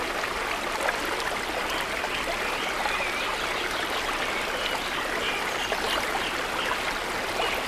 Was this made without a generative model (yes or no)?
yes